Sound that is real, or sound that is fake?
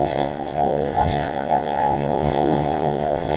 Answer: fake